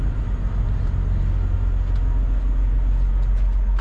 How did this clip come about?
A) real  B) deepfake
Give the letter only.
A